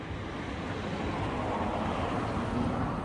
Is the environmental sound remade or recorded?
recorded